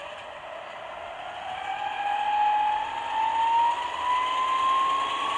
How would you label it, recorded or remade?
recorded